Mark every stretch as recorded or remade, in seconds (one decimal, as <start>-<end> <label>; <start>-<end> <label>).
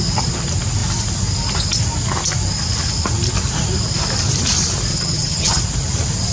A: 0.0-4.9 recorded; 4.9-5.6 remade; 5.6-6.3 recorded